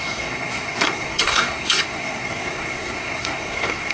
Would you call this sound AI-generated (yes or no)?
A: yes